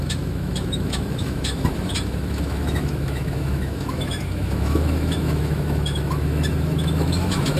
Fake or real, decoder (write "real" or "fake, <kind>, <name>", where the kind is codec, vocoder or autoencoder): fake, autoencoder, DAC-VAE